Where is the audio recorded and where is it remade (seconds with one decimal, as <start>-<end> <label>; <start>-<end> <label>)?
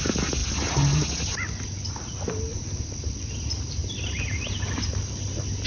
0.0-5.7 recorded